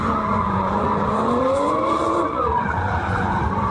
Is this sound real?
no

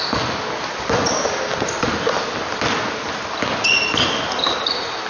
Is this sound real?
yes